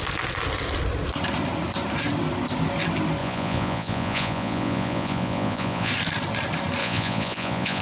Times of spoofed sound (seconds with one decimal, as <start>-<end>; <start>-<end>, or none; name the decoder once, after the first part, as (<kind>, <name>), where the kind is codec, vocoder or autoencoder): 3.2-5.9 (vocoder, Vocos); 6.8-7.8